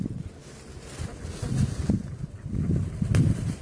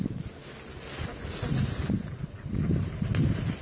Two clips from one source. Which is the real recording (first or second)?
second